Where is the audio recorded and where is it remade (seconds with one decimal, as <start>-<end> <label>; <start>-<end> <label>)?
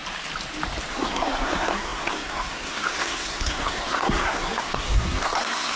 0.0-0.9 recorded; 0.9-5.8 remade